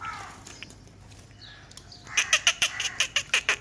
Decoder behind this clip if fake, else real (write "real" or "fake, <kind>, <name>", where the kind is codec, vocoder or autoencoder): real